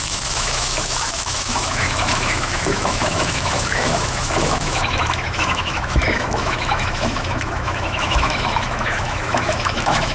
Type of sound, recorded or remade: remade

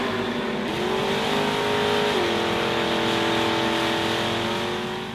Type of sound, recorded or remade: recorded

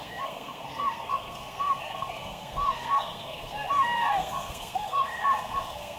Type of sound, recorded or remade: remade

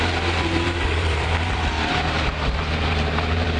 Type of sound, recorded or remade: remade